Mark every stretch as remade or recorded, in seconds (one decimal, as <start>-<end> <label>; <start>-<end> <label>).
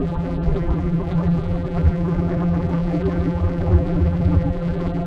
0.0-5.1 remade